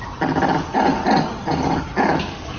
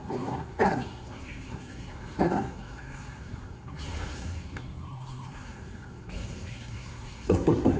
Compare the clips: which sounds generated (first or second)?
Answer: second